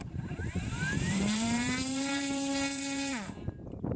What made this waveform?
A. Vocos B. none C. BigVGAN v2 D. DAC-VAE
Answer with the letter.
C